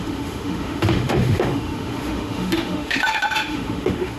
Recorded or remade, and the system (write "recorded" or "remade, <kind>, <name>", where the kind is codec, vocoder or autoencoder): remade, autoencoder, DAC-VAE